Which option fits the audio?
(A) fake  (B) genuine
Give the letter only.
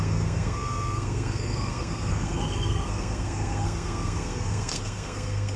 A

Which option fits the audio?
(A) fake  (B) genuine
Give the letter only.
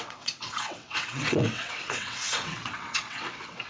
A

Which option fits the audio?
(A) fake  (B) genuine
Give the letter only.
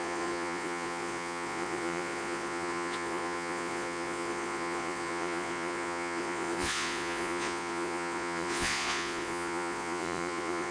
A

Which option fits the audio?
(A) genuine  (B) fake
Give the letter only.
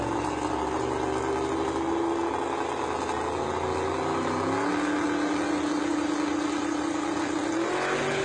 A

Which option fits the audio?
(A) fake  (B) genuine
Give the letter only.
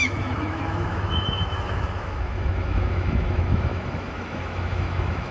A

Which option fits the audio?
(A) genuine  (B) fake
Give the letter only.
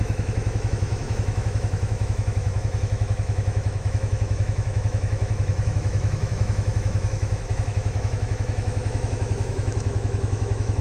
B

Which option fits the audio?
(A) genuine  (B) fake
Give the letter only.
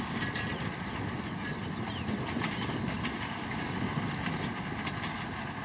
A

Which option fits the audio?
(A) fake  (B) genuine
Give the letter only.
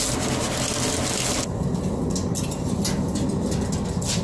B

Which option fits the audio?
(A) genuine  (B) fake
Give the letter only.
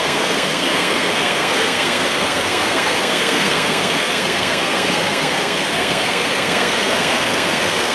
B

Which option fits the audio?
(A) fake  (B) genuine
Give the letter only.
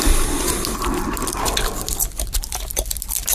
B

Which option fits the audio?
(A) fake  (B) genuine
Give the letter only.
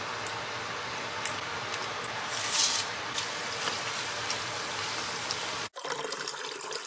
B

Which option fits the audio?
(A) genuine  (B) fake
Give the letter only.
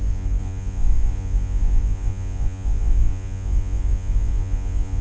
B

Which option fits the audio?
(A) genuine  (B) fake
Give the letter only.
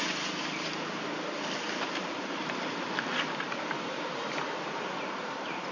B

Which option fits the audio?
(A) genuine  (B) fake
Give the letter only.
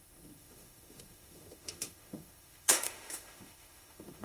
B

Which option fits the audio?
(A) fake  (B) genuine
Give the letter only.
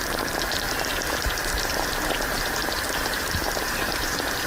A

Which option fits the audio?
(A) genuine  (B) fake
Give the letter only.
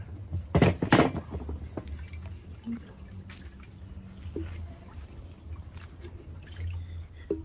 A